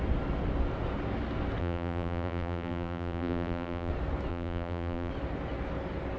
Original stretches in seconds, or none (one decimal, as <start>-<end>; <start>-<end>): 0.0-1.6; 3.9-4.3; 5.1-6.2